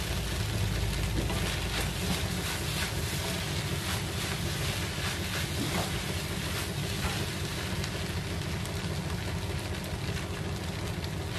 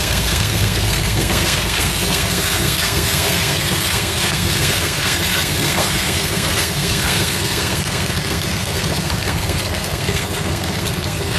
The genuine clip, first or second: first